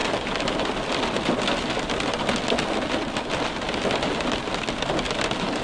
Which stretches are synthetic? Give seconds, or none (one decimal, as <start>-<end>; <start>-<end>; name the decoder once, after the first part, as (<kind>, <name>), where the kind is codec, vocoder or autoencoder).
none

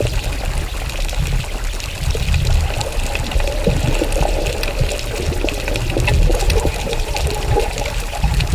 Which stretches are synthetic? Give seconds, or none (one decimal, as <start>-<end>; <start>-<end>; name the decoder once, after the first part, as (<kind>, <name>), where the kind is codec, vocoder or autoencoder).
6.3-8.5 (vocoder, BigVGAN v2)

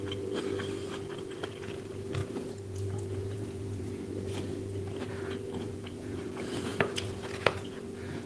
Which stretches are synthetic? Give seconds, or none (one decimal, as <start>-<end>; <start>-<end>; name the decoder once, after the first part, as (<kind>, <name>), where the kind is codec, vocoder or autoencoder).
0.0-0.4 (vocoder, Vocos); 1.1-8.3

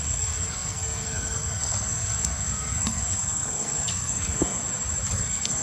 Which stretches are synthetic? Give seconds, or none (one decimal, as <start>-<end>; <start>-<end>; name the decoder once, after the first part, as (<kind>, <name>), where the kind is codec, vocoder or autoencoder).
0.0-4.6 (codec, SNAC); 5.1-5.6

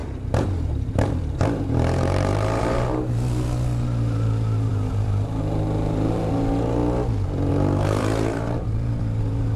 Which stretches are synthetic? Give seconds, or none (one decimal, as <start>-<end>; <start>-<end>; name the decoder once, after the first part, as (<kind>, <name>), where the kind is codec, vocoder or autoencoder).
0.0-6.8 (vocoder, BigVGAN v2); 7.5-9.6

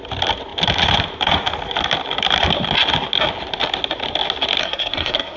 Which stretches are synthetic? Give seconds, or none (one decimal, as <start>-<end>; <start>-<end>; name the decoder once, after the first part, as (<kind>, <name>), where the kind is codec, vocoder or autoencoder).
4.6-5.4 (codec, SNAC)

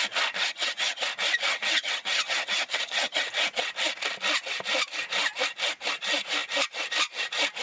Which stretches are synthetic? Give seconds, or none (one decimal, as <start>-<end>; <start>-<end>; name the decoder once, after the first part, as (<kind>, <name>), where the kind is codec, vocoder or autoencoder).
0.4-1.0 (vocoder, HiFi-GAN); 1.5-3.3

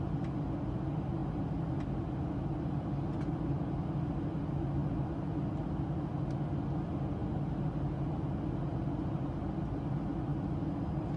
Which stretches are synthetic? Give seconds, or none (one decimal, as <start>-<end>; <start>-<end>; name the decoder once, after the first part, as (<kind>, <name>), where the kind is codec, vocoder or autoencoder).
none